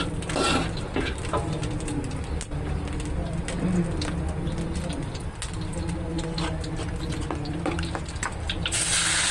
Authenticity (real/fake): real